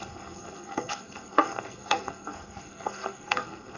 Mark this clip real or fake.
fake